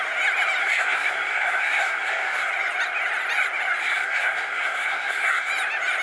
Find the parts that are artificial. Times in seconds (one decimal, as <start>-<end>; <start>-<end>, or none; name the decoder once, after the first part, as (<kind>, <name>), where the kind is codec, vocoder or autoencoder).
0.6-2.5 (codec, SNAC); 3.8-5.5